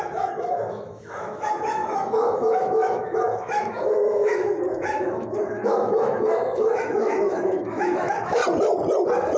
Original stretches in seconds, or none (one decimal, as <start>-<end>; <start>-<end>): 8.4-9.4